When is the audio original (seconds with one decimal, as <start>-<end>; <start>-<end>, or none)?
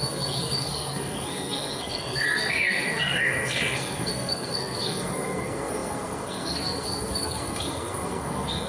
none